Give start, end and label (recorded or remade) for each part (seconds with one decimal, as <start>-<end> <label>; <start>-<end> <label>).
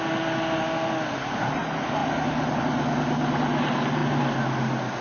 0.0-5.0 recorded